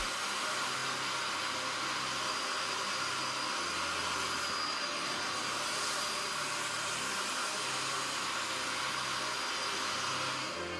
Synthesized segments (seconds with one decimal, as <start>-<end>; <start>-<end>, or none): none